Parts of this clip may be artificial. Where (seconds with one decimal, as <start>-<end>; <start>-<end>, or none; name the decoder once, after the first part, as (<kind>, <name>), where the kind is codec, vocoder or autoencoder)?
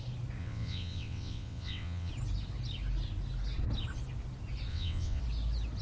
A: 0.4-2.1 (vocoder, WaveNeXt); 4.7-5.2